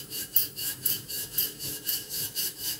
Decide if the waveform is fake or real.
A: fake